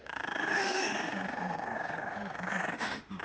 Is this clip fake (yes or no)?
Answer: yes